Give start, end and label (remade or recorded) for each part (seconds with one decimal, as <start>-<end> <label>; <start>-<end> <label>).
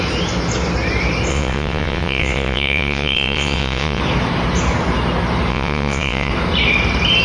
0.0-1.3 recorded; 1.3-4.0 remade; 4.0-5.5 recorded; 5.5-6.3 remade; 6.3-7.2 recorded